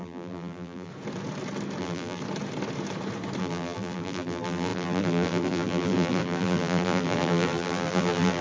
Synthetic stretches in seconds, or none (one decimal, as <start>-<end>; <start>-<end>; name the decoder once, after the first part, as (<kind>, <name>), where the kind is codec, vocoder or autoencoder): 0.0-0.9 (vocoder, BigVGAN v2); 1.8-2.2; 3.4-8.4